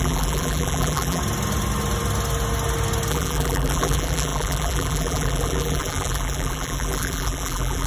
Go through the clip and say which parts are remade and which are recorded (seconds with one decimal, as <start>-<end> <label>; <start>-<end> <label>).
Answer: 0.0-1.2 remade; 1.2-3.1 recorded; 3.1-7.9 remade